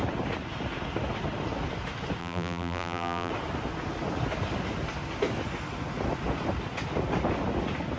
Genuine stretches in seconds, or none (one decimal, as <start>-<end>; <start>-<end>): 0.0-2.2; 3.3-8.0